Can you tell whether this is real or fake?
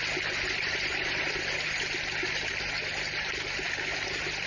fake